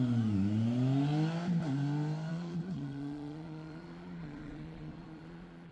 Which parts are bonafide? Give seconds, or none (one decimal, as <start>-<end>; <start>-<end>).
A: 0.0-2.3